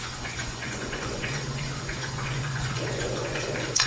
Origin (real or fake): fake